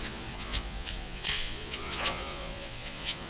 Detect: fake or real fake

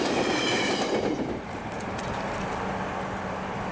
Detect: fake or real real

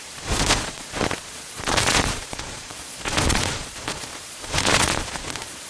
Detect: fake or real fake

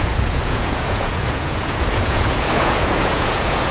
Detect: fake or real fake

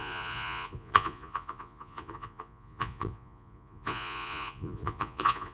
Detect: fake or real fake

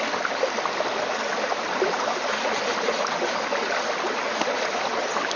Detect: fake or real real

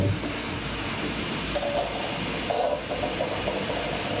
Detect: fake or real real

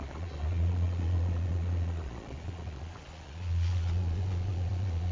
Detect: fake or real fake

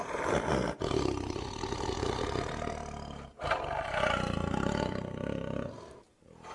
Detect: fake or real real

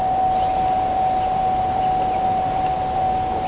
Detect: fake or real real